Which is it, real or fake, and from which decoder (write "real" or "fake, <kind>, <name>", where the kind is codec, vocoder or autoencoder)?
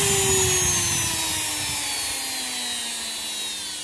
real